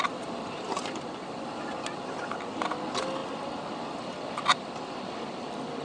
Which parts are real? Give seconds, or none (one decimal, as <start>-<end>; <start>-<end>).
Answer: 0.0-5.8